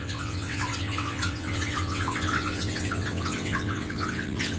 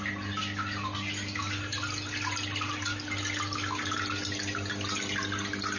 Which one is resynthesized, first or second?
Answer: first